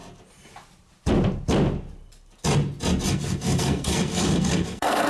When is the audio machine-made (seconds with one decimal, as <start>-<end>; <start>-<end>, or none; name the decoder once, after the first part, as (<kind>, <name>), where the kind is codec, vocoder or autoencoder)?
3.1-5.1 (codec, SNAC)